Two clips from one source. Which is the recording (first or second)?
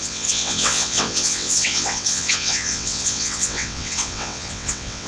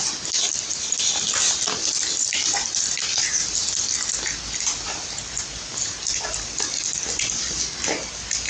second